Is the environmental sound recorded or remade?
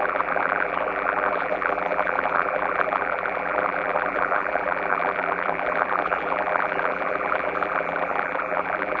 remade